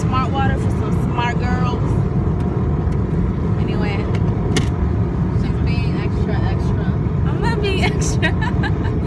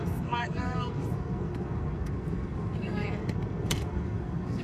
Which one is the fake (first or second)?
second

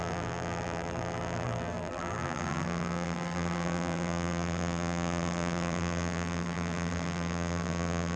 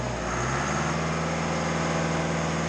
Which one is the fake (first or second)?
first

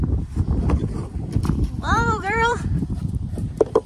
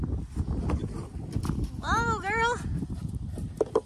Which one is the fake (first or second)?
first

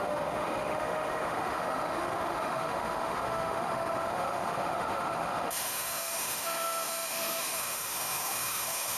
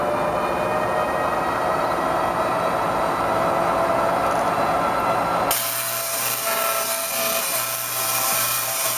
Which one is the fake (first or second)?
first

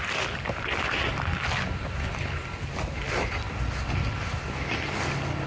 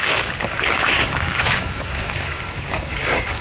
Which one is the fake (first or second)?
second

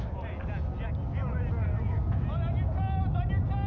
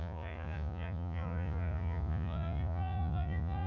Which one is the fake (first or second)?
second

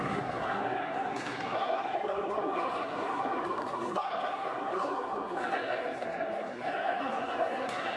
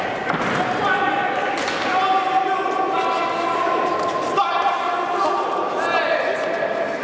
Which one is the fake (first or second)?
first